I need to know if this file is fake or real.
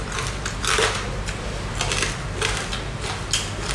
real